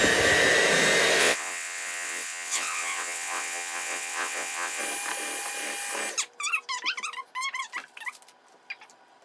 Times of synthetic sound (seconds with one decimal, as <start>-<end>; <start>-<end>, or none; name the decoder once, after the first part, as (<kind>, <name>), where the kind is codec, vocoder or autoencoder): 1.2-4.8 (vocoder, WaveNeXt)